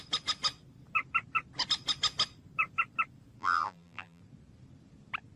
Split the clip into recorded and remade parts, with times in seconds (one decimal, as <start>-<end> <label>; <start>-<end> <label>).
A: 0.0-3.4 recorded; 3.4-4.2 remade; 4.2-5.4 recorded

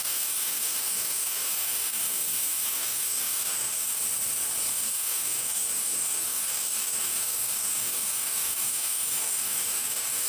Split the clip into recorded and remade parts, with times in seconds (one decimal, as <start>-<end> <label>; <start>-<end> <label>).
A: 0.0-4.0 remade; 4.0-4.7 recorded; 4.7-10.3 remade

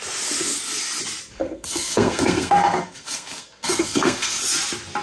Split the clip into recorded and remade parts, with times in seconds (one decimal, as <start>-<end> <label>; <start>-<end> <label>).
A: 0.0-1.4 recorded; 1.4-4.4 remade; 4.4-5.0 recorded

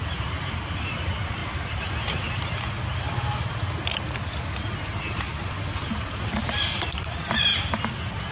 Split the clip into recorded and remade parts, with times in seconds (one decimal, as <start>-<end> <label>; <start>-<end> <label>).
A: 0.0-1.4 remade; 1.4-5.4 recorded; 5.4-7.5 remade; 7.5-8.3 recorded

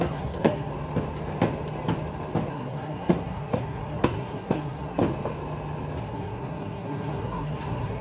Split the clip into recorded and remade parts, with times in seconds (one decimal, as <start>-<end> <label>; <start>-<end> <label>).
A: 0.0-0.7 remade; 0.7-2.5 recorded; 2.5-5.0 remade; 5.0-6.0 recorded; 6.0-8.0 remade